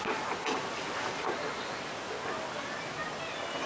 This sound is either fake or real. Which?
real